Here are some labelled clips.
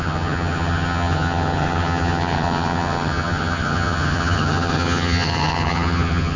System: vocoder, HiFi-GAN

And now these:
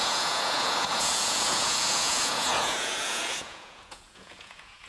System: vocoder, Vocos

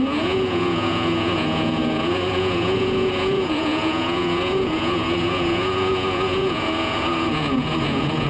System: vocoder, Vocos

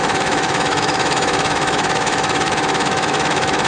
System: autoencoder, DAC-VAE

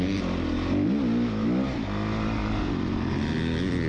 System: none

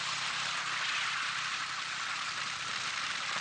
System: none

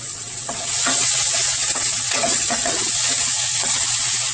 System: vocoder, WaveNeXt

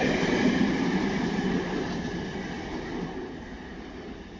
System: none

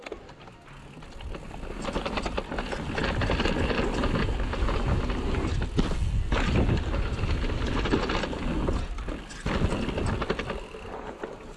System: none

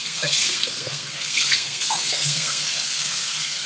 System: codec, SNAC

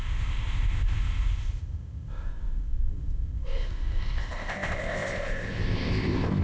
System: codec, ZipCodec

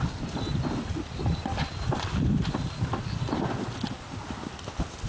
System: none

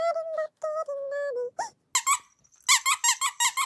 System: none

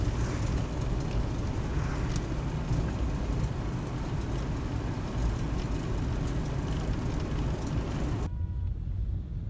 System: none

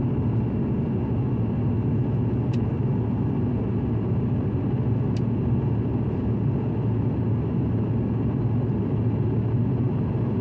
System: none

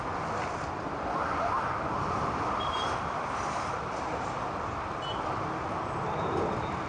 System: none